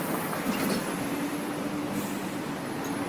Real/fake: real